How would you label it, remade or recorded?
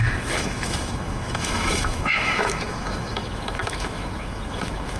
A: remade